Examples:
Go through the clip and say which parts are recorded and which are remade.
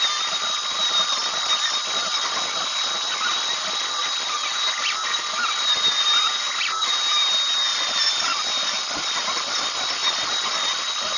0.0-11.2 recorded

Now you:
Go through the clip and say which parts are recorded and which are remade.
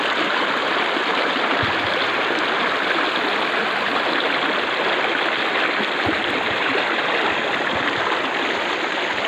0.0-9.3 recorded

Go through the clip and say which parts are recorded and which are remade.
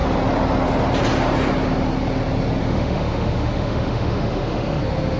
0.0-2.6 recorded; 2.6-4.8 remade; 4.8-5.2 recorded